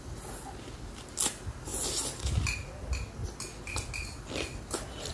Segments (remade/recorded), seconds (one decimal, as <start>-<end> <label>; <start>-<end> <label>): 0.0-5.1 recorded